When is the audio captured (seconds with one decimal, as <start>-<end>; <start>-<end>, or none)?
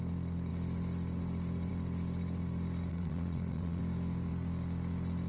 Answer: 0.0-2.9; 3.8-5.3